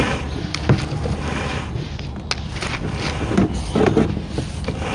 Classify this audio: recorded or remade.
recorded